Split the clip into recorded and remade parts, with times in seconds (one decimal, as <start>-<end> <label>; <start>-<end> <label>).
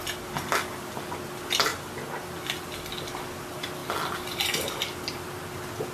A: 0.0-3.8 recorded; 3.8-5.4 remade; 5.4-5.9 recorded